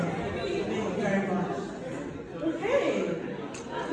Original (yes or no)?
yes